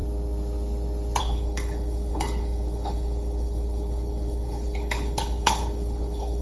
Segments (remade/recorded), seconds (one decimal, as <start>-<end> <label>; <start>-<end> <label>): 0.0-1.2 recorded; 1.2-6.4 remade